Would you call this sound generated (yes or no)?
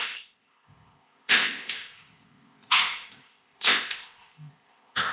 yes